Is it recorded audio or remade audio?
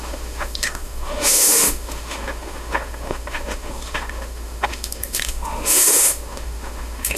remade